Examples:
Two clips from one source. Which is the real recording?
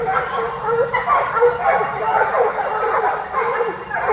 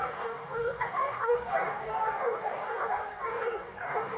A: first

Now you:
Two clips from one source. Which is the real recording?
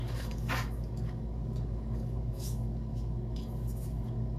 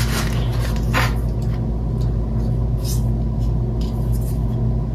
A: second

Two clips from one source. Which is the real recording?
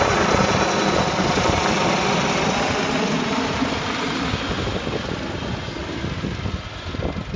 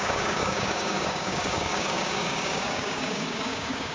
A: first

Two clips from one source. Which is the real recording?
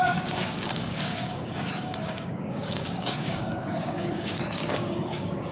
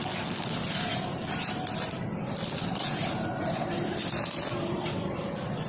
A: second